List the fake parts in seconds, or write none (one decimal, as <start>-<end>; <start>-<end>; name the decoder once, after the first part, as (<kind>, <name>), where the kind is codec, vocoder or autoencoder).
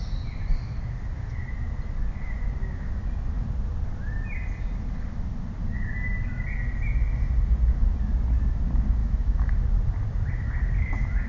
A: 9.0-9.5 (autoencoder, DAC-VAE)